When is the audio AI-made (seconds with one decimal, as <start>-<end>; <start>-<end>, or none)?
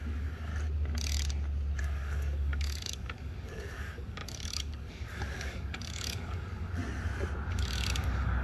0.0-0.5; 1.8-6.8; 7.5-8.4